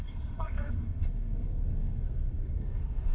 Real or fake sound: fake